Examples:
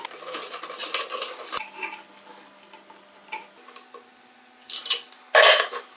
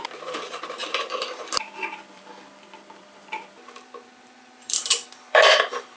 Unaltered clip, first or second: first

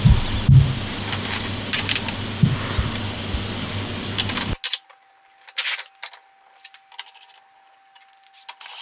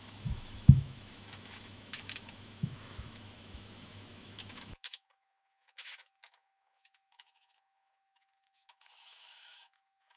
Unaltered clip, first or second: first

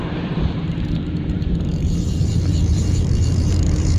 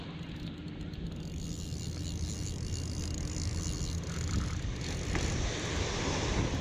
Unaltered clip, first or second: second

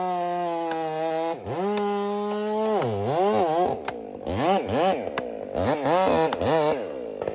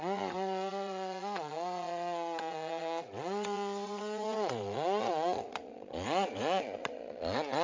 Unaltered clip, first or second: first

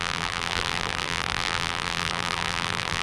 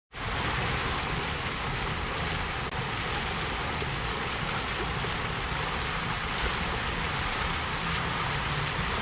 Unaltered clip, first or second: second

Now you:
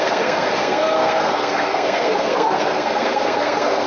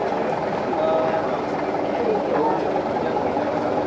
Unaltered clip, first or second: second